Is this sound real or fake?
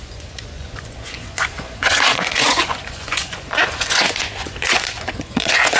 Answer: fake